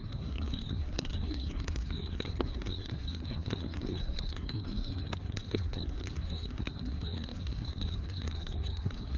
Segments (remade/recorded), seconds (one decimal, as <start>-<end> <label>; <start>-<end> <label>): 0.0-9.2 remade